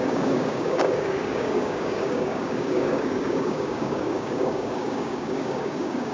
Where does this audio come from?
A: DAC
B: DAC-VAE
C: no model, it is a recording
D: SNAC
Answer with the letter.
A